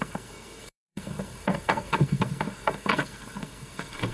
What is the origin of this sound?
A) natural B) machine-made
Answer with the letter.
B